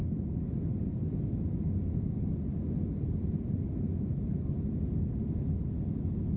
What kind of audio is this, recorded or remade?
recorded